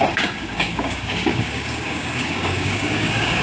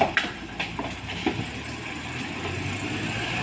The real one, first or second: second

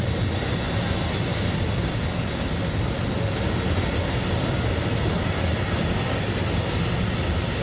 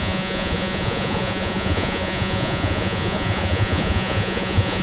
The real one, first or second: first